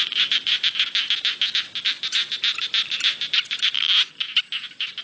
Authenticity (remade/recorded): recorded